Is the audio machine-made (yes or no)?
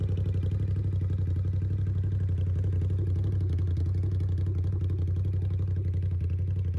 no